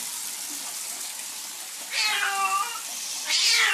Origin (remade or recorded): recorded